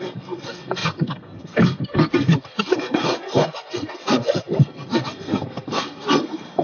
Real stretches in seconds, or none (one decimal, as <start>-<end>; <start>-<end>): none